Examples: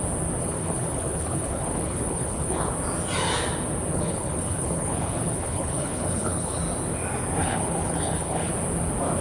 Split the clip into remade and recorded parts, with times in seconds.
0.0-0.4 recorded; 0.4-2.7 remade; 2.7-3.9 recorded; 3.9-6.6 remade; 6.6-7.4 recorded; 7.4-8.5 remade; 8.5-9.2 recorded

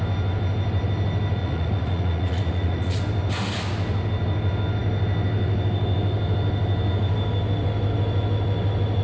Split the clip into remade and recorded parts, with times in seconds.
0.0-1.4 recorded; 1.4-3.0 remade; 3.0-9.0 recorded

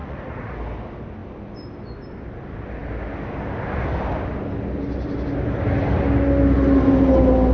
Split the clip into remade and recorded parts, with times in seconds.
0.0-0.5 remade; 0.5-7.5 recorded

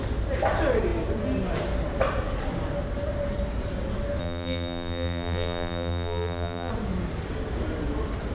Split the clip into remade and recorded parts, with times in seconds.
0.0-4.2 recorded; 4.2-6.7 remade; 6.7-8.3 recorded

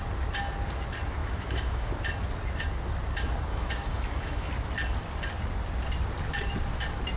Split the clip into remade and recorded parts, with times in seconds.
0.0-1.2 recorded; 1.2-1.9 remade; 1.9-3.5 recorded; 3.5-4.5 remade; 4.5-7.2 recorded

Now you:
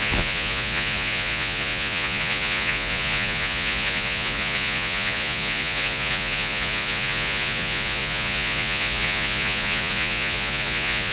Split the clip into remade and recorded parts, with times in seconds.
0.0-11.1 remade

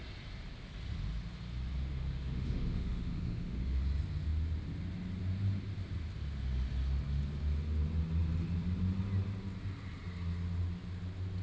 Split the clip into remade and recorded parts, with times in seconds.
0.0-1.9 recorded; 1.9-3.8 remade; 3.8-11.4 recorded

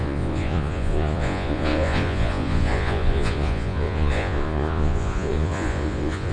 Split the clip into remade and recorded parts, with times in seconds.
0.0-6.3 remade